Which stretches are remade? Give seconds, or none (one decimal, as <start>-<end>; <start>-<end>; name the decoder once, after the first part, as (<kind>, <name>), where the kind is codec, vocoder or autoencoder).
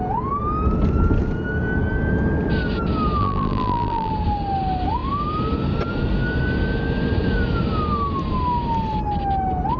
3.2-4.1 (vocoder, BigVGAN v2)